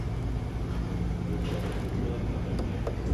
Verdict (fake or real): real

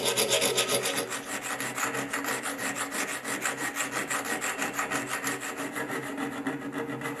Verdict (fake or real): real